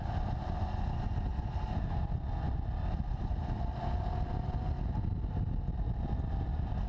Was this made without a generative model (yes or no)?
yes